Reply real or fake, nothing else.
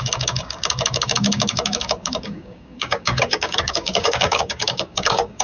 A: fake